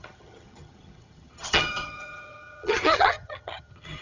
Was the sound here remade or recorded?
remade